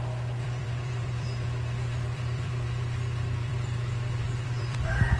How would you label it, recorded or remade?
remade